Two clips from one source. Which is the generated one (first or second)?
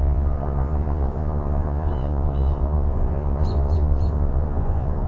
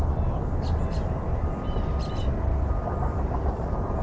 first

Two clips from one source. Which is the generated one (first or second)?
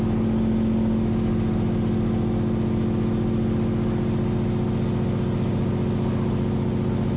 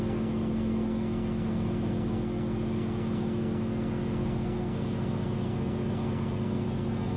second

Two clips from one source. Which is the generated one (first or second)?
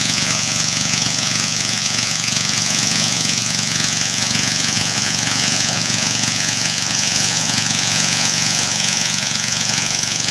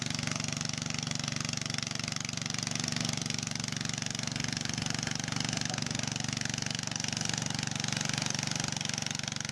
first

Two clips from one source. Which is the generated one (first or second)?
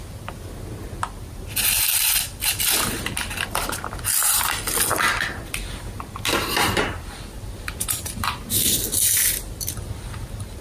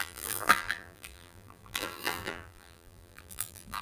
second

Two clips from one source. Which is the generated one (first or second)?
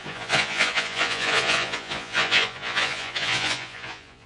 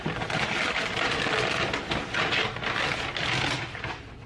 first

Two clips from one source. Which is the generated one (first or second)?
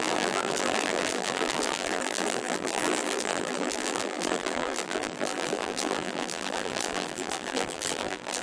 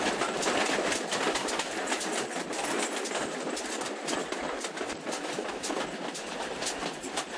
first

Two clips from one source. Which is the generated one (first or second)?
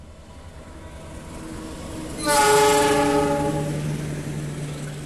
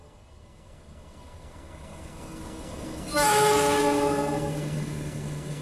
second